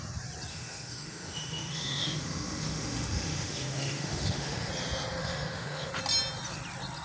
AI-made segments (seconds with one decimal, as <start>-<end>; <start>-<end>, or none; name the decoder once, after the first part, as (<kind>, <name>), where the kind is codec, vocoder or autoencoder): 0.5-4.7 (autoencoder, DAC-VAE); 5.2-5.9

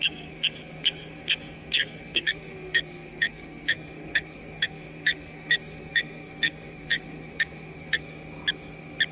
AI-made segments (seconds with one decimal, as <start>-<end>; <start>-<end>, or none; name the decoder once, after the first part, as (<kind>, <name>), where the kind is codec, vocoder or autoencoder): 0.0-8.0 (codec, SNAC)

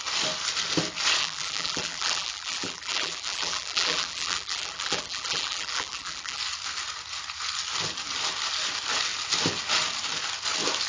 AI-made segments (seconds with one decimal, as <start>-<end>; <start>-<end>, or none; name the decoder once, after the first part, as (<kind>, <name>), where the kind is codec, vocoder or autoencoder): 1.2-6.4 (vocoder, BigVGAN v2)